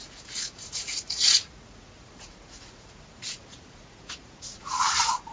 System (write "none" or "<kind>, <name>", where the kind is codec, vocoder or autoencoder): vocoder, Vocos